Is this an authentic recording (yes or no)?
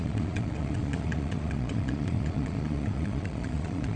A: no